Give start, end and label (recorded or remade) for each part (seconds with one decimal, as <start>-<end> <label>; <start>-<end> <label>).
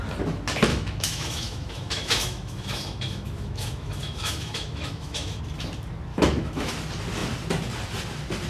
0.0-0.7 recorded; 0.7-5.4 remade; 5.4-6.1 recorded; 6.1-6.7 remade; 6.7-8.5 recorded